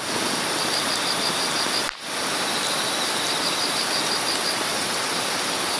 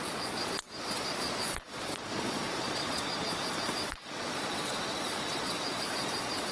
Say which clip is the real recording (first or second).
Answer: first